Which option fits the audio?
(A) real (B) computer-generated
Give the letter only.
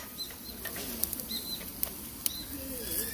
A